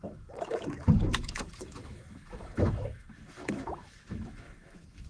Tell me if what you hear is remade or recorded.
remade